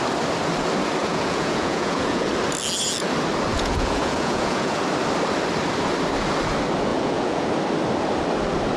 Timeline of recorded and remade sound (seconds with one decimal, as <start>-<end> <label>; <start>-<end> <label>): 0.0-1.0 recorded; 1.0-2.3 remade; 2.3-3.5 recorded; 3.5-4.8 remade; 4.8-6.9 recorded; 6.9-7.5 remade; 7.5-8.8 recorded